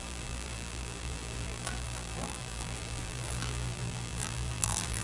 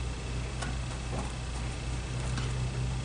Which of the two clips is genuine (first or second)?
second